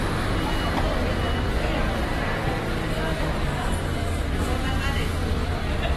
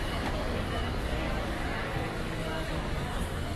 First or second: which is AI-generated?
second